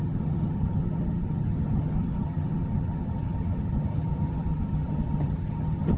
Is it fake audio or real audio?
fake